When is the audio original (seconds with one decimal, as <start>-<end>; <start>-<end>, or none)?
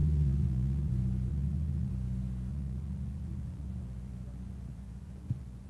0.9-1.3; 1.9-2.5